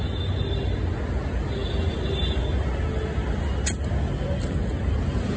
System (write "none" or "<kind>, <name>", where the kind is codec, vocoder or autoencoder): none